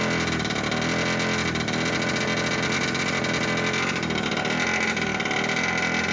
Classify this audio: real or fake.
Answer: real